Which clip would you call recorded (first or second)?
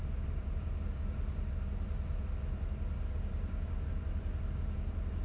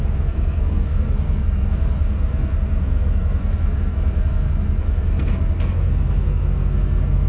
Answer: first